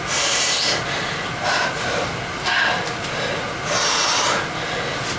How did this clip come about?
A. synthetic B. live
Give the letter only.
B